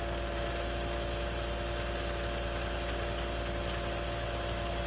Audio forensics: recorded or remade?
recorded